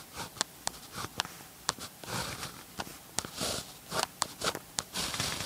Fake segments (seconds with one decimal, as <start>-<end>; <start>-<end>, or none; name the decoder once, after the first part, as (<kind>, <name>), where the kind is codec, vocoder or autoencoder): 0.0-5.5 (vocoder, BigVGAN v2)